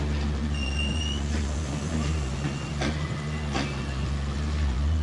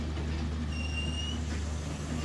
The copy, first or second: first